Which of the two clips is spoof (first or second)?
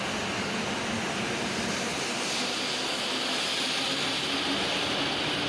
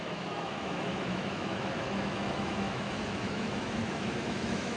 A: second